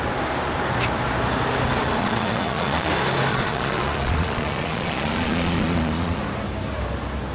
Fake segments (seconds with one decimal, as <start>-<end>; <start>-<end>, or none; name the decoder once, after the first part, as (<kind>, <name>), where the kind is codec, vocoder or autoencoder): 2.0-2.9 (vocoder, Vocos); 3.3-6.2